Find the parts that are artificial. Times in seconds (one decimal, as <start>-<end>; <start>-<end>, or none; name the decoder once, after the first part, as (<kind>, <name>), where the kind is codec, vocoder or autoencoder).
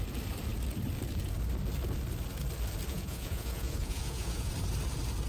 2.9-4.5 (vocoder, Vocos)